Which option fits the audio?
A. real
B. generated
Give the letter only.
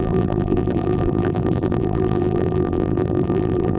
B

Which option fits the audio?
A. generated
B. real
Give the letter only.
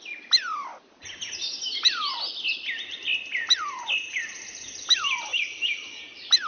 B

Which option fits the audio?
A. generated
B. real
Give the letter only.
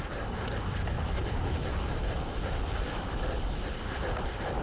A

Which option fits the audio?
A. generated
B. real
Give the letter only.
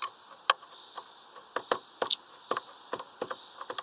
B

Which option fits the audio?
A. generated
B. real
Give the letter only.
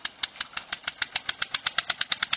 B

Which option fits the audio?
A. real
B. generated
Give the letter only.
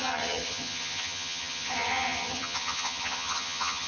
B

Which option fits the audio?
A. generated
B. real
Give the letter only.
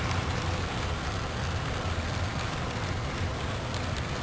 B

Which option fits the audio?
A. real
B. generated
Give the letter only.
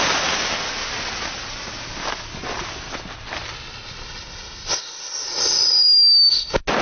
A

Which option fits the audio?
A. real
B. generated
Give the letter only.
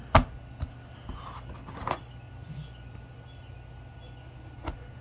A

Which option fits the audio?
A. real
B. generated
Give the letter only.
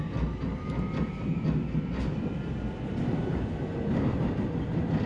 A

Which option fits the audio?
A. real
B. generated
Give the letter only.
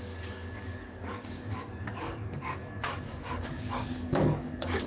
B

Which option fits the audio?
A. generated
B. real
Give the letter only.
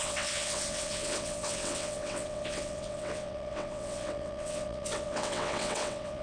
A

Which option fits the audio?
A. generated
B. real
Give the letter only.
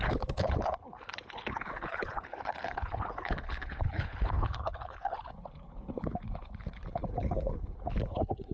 A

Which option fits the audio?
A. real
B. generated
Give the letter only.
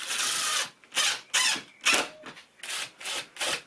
A